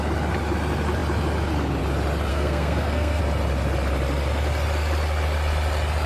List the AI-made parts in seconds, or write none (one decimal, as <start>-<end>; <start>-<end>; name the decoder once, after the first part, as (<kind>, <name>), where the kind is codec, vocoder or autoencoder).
2.3-3.2 (codec, SNAC)